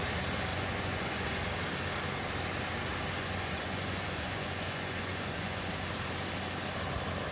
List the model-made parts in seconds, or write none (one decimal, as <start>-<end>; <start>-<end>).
0.5-1.4; 3.2-5.7